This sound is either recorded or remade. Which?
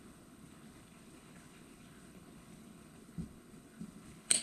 remade